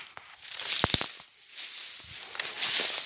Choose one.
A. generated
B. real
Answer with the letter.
B